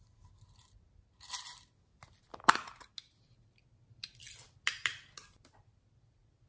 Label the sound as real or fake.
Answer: real